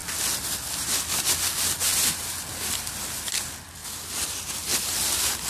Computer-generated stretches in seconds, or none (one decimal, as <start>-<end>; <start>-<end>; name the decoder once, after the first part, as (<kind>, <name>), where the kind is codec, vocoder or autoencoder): none